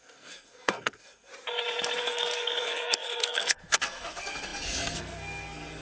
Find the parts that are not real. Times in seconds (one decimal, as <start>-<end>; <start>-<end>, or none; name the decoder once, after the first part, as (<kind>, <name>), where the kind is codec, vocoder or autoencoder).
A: 0.0-1.3 (codec, SNAC); 2.0-5.8